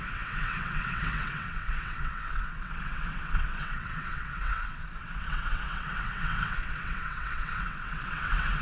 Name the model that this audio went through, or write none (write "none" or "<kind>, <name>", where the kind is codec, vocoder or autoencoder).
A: vocoder, WaveNeXt